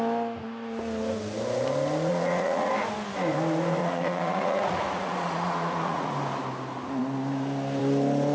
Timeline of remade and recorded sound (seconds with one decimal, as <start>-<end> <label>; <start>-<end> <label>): 0.0-2.1 recorded; 2.1-2.7 remade; 2.7-3.8 recorded; 3.8-6.1 remade; 6.1-8.3 recorded